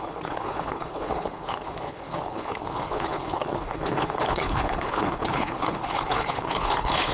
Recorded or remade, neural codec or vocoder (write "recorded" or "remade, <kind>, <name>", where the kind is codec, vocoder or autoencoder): remade, codec, HILCodec